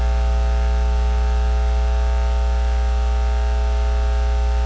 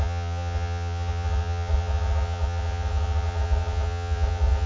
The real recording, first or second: first